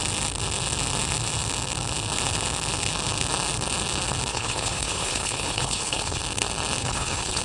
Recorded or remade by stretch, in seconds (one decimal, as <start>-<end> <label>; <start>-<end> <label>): 0.0-4.3 recorded; 4.3-6.2 remade; 6.2-6.8 recorded; 6.8-7.4 remade